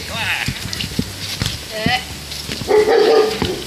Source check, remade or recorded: recorded